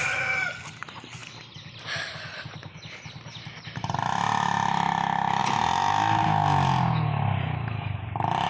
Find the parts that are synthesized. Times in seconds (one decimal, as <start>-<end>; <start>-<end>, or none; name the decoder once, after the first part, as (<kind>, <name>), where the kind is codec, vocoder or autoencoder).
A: none